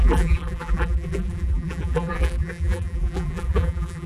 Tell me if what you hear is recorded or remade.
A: remade